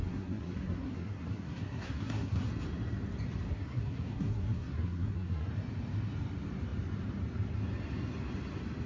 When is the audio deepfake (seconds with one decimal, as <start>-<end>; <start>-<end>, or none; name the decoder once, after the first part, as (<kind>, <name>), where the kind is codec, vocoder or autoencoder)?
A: 0.0-2.5 (codec, SNAC); 3.5-5.5